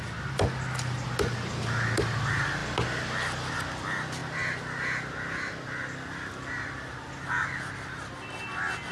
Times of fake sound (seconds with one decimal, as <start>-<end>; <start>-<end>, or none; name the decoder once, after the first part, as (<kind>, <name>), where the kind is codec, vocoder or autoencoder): none